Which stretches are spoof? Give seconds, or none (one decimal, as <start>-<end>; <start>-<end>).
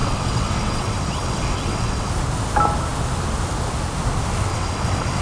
0.0-2.1; 4.5-5.2